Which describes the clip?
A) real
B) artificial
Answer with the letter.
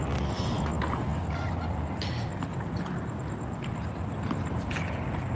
A